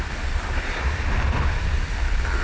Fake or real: real